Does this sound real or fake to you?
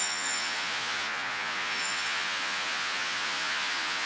fake